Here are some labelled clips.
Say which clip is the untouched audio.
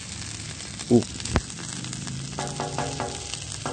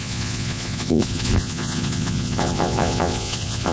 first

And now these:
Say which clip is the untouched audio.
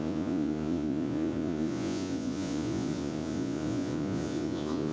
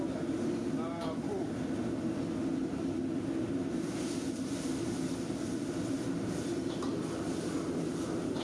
second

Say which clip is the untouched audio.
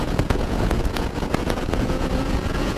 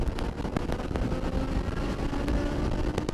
second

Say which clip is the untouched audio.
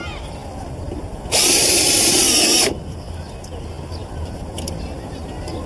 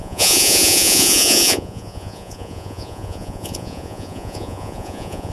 first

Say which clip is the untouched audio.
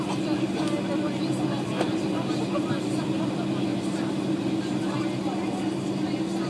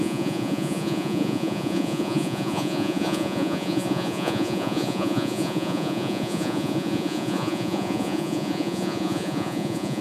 first